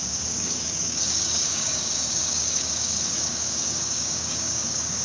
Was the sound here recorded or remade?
remade